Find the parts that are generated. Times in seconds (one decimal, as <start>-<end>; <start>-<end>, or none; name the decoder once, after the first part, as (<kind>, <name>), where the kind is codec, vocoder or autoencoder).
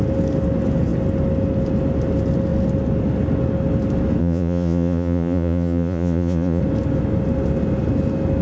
4.2-6.6 (vocoder, Vocos)